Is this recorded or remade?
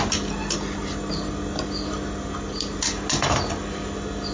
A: recorded